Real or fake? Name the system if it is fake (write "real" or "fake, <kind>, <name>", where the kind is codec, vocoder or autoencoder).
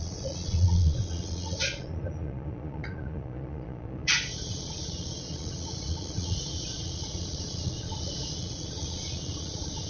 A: fake, vocoder, Vocos